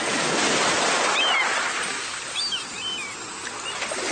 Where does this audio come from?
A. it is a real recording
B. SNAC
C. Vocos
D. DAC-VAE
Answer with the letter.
A